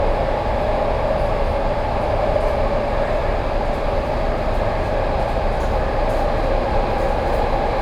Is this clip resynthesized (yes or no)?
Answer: no